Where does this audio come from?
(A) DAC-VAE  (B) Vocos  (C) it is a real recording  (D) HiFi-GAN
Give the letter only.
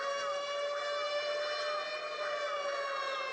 C